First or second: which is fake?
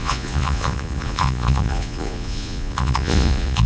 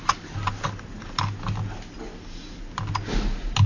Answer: first